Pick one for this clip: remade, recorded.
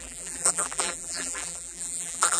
remade